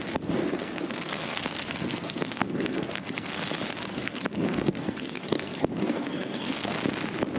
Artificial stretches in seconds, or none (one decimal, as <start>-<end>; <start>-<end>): 0.4-3.4; 3.9-6.7